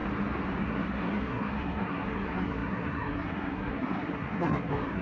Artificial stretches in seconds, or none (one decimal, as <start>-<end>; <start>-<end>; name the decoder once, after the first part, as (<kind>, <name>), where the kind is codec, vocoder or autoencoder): 0.6-5.0 (codec, SNAC)